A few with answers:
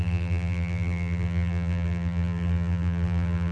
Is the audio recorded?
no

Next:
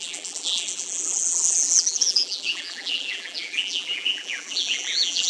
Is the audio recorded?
no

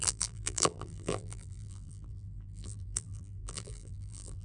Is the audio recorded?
no